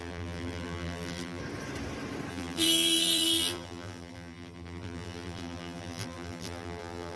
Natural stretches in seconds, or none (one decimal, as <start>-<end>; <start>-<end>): 1.4-2.3